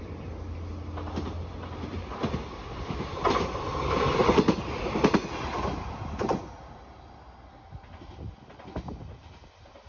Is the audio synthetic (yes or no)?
no